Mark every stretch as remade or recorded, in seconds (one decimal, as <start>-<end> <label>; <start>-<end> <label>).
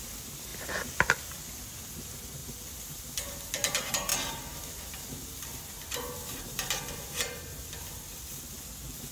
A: 0.0-9.1 recorded